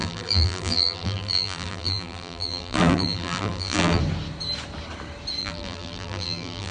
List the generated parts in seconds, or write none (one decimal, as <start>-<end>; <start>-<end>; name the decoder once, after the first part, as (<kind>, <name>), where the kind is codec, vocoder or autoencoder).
0.0-4.0 (vocoder, BigVGAN v2); 5.4-6.7